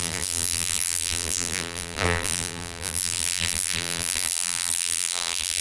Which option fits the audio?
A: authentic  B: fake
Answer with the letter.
B